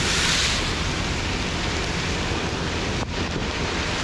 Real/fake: real